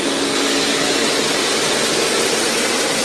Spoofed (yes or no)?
no